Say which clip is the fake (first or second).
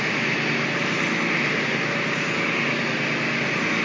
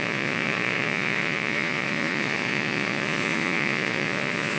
second